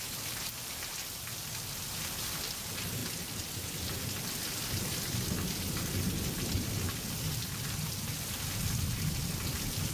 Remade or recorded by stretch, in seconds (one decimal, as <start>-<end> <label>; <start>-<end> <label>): 0.0-9.9 recorded